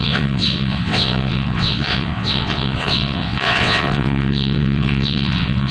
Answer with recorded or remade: remade